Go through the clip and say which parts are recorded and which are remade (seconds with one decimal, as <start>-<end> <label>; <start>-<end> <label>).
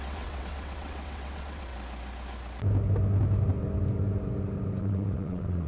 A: 0.0-1.7 remade; 1.7-4.8 recorded; 4.8-5.7 remade